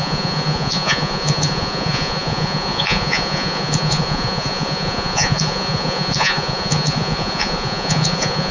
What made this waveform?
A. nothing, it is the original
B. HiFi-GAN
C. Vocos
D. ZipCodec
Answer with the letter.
C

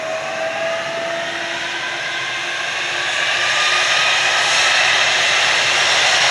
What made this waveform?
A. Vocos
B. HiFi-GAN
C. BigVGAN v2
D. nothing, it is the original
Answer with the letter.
D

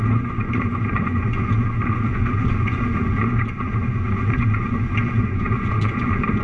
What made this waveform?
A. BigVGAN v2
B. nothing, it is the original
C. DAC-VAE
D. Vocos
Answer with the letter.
D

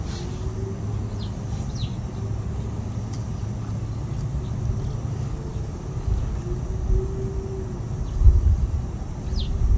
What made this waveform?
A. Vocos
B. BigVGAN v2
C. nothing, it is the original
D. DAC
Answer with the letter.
C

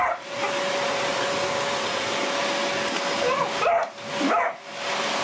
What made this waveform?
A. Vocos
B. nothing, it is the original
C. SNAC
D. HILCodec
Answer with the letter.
B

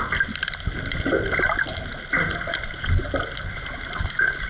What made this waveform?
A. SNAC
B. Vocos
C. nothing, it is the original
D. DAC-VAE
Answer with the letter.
C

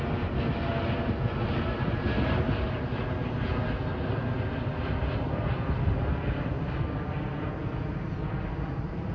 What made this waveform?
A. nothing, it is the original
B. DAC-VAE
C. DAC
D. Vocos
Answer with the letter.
A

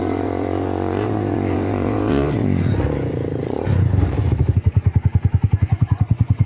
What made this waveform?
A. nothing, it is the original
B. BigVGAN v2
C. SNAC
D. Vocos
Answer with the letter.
D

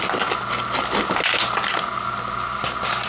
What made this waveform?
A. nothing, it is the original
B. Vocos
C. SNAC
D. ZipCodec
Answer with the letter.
A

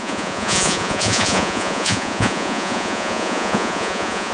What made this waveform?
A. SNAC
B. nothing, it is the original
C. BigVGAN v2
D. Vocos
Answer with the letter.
D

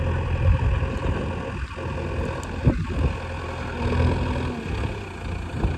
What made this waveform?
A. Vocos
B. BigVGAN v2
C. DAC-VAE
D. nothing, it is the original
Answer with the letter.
D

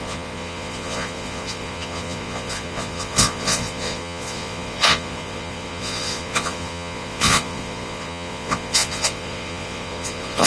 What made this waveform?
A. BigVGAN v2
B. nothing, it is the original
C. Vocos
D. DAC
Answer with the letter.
C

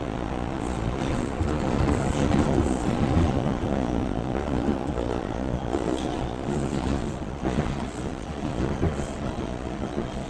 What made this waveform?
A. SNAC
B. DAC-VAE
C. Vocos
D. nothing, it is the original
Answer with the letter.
C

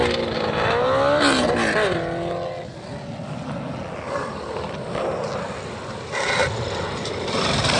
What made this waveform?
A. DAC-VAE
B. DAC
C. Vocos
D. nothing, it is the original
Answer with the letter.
D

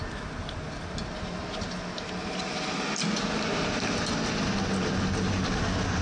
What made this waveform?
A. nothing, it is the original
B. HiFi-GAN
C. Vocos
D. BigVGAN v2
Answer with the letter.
A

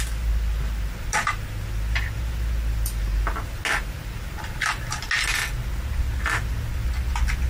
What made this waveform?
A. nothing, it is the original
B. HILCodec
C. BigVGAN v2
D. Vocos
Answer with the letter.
A